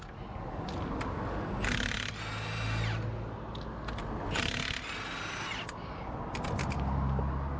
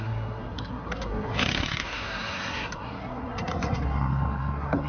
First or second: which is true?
first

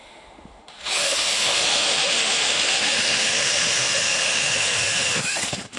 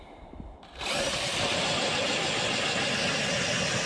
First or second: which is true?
second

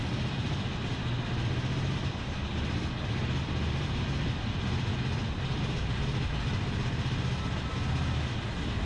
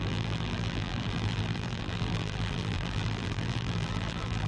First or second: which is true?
first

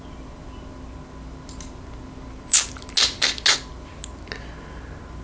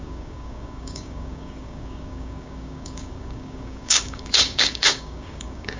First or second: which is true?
first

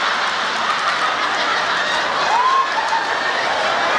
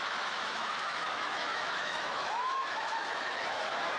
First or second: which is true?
first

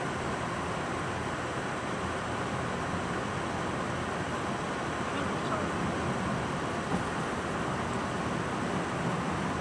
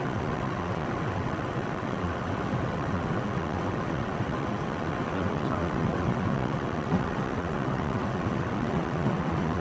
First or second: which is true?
first